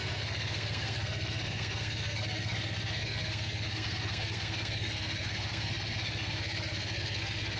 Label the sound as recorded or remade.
remade